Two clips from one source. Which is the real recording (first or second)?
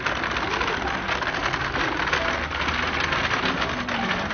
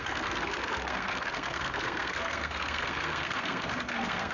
first